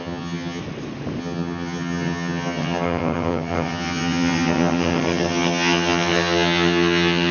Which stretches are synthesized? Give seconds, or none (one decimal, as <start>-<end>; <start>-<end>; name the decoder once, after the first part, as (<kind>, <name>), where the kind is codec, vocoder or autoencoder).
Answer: 0.0-0.6 (vocoder, HiFi-GAN); 1.2-7.3